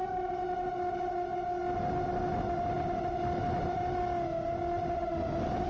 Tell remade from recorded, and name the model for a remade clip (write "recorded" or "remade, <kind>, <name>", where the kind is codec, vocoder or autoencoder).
recorded